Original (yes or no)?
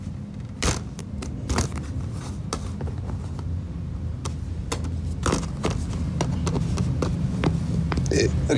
yes